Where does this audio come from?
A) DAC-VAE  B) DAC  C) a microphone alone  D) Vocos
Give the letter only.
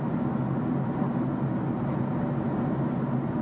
C